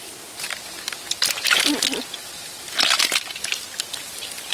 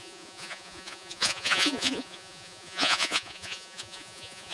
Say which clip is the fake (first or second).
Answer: second